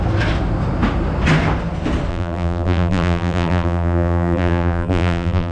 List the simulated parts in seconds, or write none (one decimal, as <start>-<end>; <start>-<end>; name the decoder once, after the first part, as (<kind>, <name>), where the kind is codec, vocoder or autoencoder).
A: 2.1-5.5 (vocoder, BigVGAN v2)